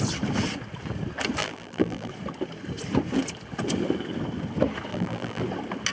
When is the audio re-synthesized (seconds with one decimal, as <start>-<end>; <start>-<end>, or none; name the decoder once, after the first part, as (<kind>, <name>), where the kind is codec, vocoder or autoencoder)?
1.4-2.1 (vocoder, BigVGAN v2); 4.9-5.4

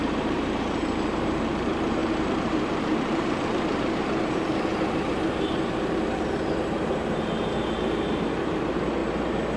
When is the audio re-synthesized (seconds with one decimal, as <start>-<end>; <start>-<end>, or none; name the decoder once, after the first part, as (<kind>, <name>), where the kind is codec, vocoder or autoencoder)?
0.0-9.0 (vocoder, BigVGAN v2)